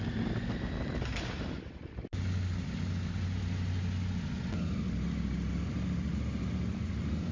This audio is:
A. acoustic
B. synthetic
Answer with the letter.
A